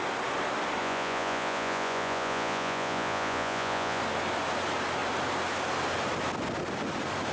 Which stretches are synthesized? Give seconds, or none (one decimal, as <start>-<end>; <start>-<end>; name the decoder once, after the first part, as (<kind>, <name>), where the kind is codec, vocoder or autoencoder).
0.8-4.0 (vocoder, Vocos)